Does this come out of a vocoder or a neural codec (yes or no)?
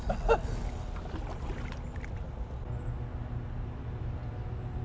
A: no